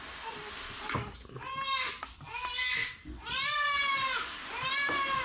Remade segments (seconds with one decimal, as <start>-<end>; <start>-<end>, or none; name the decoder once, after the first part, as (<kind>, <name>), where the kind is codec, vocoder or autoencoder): 2.8-4.7 (vocoder, BigVGAN v2)